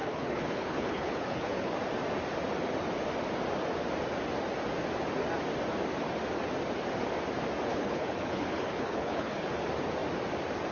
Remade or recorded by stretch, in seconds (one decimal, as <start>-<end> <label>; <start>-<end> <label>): 0.0-1.7 remade; 1.7-7.7 recorded; 7.7-9.5 remade; 9.5-10.7 recorded